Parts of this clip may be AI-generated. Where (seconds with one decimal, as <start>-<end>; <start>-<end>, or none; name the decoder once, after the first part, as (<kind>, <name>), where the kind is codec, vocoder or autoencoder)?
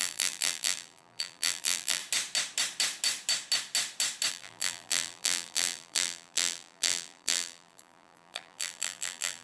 0.0-2.0 (vocoder, BigVGAN v2); 4.3-9.4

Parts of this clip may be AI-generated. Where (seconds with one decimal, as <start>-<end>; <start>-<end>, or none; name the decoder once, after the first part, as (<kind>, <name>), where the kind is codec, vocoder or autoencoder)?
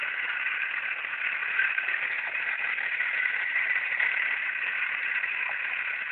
1.4-5.1 (vocoder, BigVGAN v2)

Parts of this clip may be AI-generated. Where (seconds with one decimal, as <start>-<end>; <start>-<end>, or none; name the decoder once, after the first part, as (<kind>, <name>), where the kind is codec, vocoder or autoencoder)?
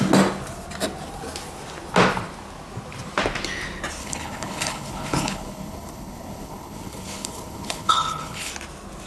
4.0-8.5 (codec, HILCodec)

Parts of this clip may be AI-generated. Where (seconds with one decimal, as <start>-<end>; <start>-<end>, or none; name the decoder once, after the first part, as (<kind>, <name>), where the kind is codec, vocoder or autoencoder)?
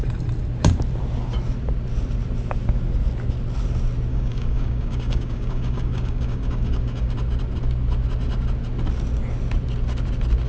4.1-7.1 (codec, DAC)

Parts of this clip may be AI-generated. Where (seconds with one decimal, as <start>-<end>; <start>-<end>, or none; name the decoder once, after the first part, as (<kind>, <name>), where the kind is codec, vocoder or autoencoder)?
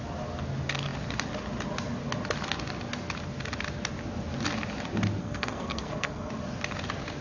5.2-6.3 (codec, SNAC)